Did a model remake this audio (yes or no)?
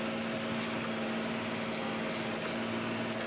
no